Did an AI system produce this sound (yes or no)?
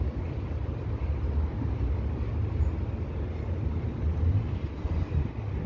no